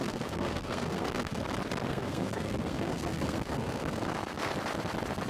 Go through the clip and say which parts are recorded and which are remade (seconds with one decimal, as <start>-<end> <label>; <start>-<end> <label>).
0.0-1.4 remade; 1.4-1.9 recorded; 1.9-4.5 remade; 4.5-5.3 recorded

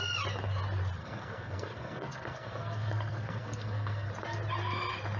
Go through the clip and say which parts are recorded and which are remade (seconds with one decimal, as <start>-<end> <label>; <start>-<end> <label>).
0.0-1.0 recorded; 1.0-4.1 remade; 4.1-5.2 recorded

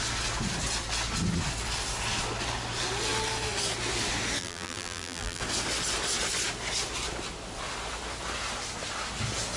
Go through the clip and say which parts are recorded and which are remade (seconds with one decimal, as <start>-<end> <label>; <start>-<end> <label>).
0.0-4.4 recorded; 4.4-5.4 remade; 5.4-9.6 recorded

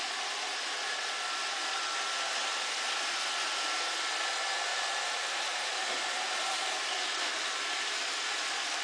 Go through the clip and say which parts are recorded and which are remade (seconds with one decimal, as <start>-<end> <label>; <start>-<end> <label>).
0.0-4.7 recorded; 4.7-6.6 remade; 6.6-8.8 recorded

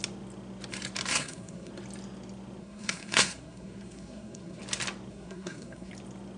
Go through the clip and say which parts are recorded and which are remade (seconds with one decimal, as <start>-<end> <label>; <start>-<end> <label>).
0.0-1.1 recorded; 1.1-1.7 remade; 1.7-2.6 recorded; 2.6-4.6 remade; 4.6-5.1 recorded; 5.1-5.9 remade; 5.9-6.4 recorded